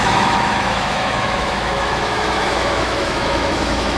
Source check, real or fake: fake